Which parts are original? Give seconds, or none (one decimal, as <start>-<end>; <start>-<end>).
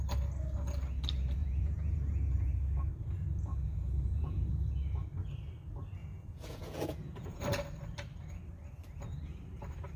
0.0-1.4; 2.9-3.5; 4.5-6.0; 7.4-10.0